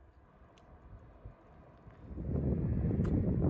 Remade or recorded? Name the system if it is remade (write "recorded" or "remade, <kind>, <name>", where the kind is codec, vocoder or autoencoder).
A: recorded